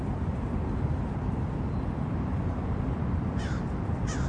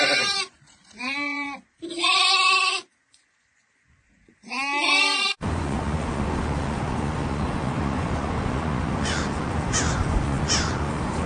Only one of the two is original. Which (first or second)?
first